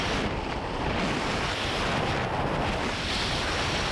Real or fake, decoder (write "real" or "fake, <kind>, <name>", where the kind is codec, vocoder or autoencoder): real